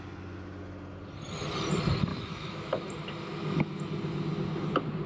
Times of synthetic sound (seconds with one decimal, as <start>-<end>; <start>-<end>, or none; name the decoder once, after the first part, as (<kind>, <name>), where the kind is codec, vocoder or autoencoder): 2.1-2.9 (autoencoder, DAC-VAE)